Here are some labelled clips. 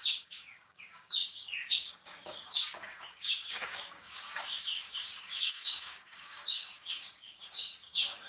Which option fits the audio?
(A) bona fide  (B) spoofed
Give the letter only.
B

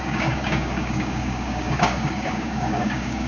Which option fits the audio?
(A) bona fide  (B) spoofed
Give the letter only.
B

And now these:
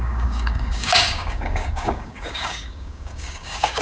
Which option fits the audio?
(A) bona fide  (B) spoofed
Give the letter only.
B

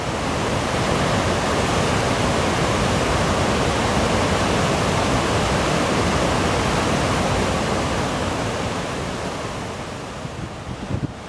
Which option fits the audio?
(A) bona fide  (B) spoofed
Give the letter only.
A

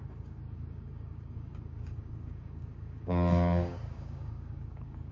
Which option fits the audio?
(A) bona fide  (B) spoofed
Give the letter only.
B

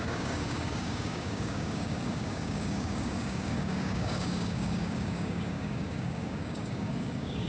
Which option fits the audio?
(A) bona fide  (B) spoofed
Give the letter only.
B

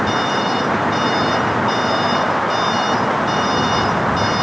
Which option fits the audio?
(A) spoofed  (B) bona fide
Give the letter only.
B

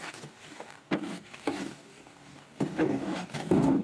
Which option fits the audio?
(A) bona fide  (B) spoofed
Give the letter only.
B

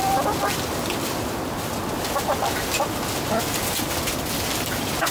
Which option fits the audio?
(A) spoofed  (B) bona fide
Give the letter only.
B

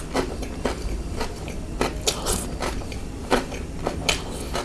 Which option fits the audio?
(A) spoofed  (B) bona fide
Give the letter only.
B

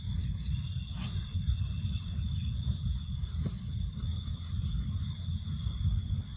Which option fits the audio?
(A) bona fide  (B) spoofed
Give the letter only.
A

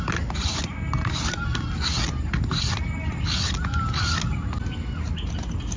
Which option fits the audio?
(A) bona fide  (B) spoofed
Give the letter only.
A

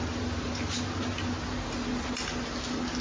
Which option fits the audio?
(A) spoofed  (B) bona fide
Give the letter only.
B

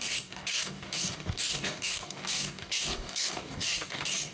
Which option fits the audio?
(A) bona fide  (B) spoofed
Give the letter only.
B